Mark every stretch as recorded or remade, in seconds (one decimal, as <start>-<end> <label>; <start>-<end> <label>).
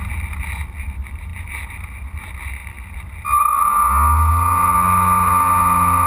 0.0-6.1 recorded